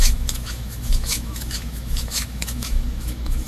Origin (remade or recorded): remade